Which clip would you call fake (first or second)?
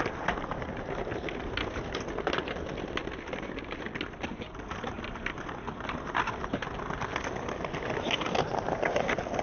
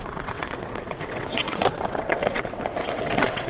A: second